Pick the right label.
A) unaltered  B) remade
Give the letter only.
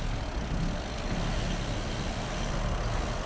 A